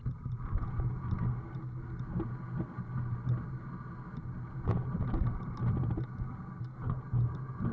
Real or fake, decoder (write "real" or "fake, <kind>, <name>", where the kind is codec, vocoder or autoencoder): real